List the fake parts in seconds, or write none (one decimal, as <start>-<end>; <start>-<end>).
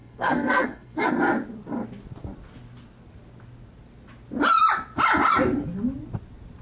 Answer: 0.0-1.1